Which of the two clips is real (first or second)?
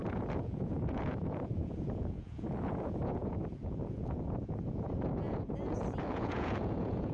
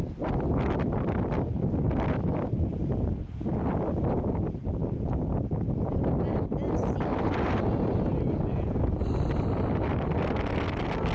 second